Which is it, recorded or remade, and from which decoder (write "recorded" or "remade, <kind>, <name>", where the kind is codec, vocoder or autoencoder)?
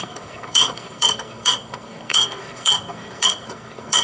remade, codec, SNAC